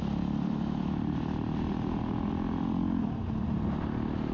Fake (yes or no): no